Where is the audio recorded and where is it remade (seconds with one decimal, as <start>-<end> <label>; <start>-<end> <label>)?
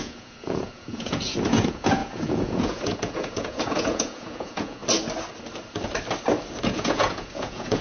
0.0-4.8 remade; 4.8-6.6 recorded; 6.6-7.8 remade